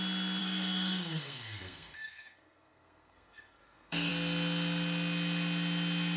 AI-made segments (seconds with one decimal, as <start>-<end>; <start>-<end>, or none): 0.4-4.1